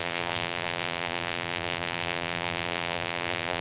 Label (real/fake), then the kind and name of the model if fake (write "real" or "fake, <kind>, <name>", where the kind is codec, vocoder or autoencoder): fake, vocoder, BigVGAN v2